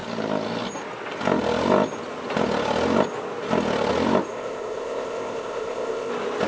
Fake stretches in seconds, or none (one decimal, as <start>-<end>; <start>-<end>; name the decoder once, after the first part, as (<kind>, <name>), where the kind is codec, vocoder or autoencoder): 4.3-6.1 (codec, ZipCodec)